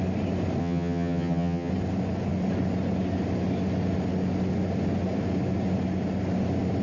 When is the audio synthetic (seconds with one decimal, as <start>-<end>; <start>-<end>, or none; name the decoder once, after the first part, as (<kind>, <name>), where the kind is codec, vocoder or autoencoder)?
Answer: 0.6-1.7 (vocoder, HiFi-GAN)

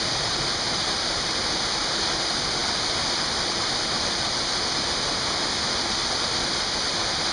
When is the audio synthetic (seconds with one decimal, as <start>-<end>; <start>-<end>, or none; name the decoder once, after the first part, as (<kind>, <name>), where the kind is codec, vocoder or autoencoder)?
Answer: none

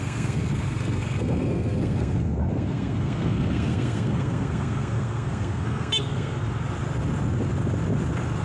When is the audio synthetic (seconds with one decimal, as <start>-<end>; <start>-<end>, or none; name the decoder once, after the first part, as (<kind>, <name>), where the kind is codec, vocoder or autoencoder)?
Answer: 0.0-6.4 (codec, SNAC)

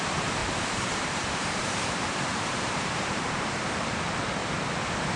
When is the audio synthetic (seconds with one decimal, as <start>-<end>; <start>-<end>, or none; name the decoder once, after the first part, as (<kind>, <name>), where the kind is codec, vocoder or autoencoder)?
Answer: 0.4-3.5 (vocoder, BigVGAN v2)